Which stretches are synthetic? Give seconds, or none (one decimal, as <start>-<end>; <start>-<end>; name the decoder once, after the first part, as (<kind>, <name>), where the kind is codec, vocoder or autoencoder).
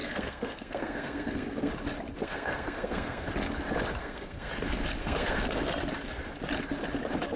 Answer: 0.0-1.7 (codec, SNAC); 2.2-3.3; 4.0-4.5; 5.0-5.7